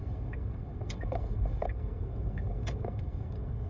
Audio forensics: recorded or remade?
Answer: remade